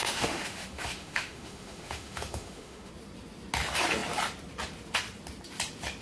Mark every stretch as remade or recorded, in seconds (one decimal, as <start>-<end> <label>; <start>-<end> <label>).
0.0-2.9 remade; 2.9-6.0 recorded